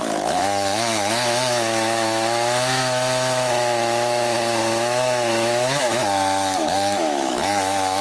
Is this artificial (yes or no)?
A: yes